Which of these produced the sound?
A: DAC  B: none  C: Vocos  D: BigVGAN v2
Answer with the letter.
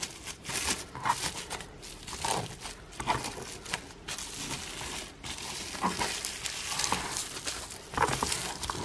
B